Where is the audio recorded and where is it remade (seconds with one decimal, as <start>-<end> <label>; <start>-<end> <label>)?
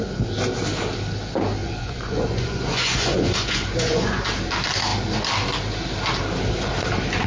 0.0-1.6 recorded; 1.6-4.2 remade; 4.2-7.3 recorded